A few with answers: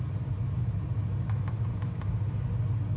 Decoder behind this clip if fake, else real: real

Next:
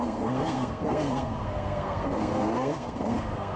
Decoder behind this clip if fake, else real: fake, codec, SNAC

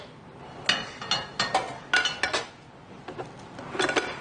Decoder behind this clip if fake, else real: real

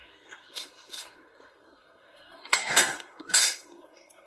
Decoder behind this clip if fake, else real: fake, codec, SNAC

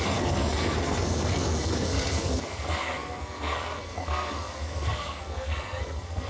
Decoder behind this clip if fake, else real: fake, codec, SNAC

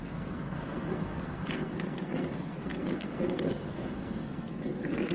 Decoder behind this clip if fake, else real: fake, codec, SNAC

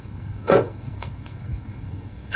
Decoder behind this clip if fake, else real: fake, codec, SNAC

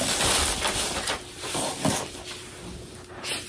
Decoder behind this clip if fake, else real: real